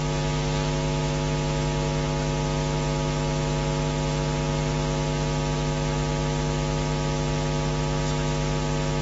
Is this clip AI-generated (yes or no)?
no